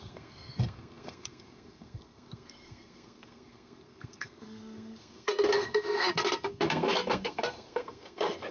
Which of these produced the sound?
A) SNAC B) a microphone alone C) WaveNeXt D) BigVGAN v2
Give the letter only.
A